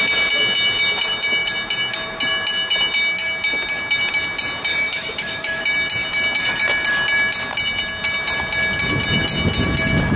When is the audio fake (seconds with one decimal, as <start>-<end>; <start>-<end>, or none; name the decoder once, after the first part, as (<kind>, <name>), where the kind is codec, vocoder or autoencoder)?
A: 4.7-5.6 (autoencoder, DAC-VAE)